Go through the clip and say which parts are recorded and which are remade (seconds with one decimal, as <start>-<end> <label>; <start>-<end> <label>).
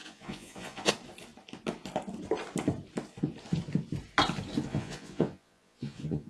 0.0-0.9 remade; 0.9-4.7 recorded; 4.7-6.3 remade